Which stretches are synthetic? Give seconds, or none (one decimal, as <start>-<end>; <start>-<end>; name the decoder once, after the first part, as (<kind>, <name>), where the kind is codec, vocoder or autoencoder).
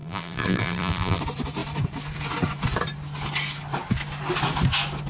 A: 0.0-1.2 (vocoder, BigVGAN v2)